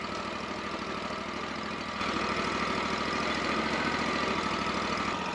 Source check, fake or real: real